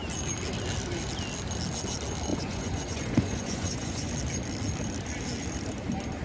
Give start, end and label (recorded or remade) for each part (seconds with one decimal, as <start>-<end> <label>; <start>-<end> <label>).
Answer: 0.0-2.3 recorded; 2.3-4.1 remade; 4.1-6.2 recorded